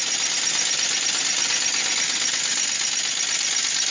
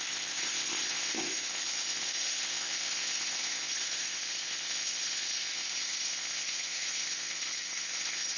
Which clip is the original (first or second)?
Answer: first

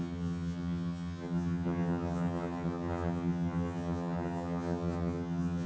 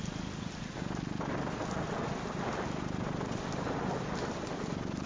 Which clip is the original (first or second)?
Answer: second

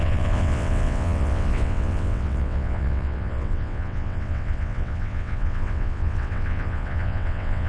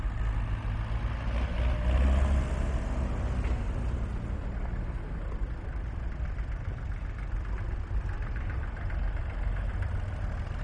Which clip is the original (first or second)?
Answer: second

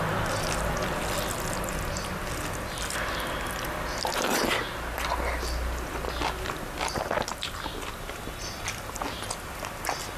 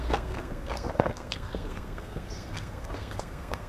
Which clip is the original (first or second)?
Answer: first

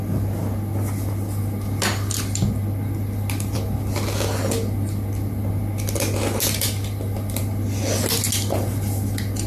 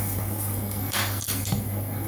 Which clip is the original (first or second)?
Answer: first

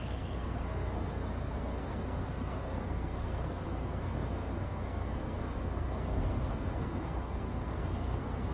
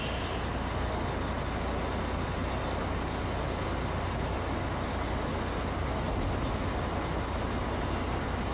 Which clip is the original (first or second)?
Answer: second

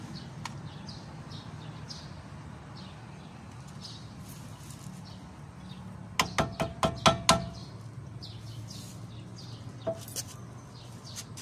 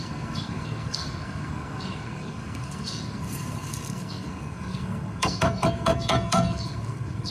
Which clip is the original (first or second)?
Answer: first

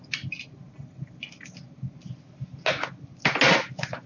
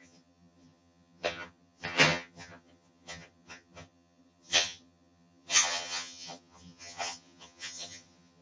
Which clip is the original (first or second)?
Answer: first